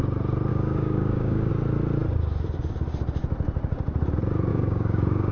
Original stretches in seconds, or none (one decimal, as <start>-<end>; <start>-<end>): 0.0-0.5; 1.5-4.5